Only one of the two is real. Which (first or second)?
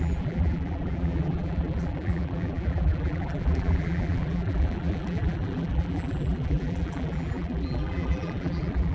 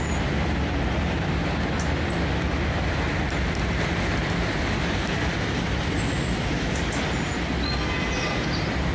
second